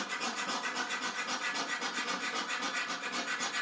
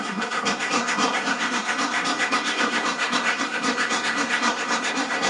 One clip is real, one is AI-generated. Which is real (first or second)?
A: first